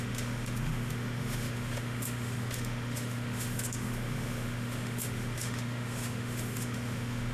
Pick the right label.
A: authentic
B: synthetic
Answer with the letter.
B